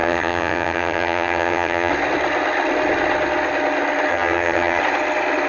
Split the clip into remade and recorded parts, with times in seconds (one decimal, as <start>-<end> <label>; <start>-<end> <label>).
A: 0.0-1.9 remade; 1.9-4.1 recorded; 4.1-4.8 remade; 4.8-5.5 recorded